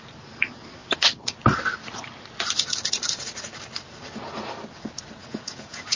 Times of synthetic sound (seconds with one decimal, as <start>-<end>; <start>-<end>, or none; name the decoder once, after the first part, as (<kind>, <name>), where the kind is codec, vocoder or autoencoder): 5.2-6.0 (vocoder, Vocos)